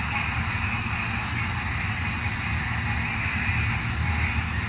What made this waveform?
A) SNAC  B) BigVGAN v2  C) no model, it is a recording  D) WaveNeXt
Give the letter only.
C